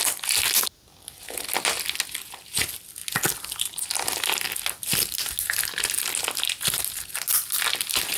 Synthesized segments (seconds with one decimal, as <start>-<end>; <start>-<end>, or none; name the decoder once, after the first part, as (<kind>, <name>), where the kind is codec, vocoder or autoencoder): none